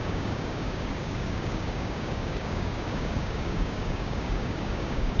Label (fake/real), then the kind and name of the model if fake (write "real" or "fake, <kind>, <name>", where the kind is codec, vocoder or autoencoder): fake, codec, DAC